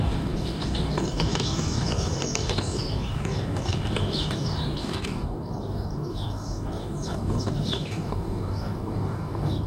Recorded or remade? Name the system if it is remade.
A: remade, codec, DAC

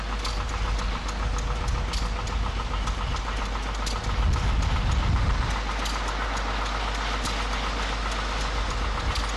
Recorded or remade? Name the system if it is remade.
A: recorded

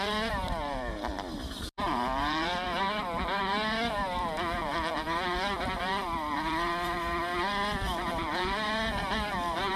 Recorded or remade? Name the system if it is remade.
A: remade, vocoder, BigVGAN v2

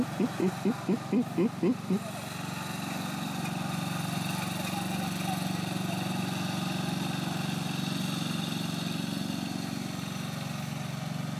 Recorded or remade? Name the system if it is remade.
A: recorded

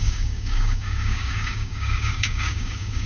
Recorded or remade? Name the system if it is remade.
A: remade, codec, DAC